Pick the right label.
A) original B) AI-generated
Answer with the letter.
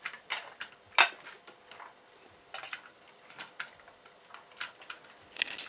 A